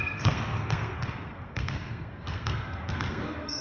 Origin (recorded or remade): remade